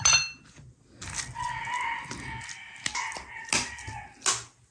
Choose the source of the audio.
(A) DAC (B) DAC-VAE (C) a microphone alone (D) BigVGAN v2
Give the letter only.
C